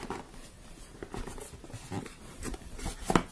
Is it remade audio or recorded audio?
recorded